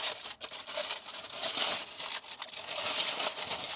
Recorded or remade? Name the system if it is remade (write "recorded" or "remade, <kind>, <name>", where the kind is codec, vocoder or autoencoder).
recorded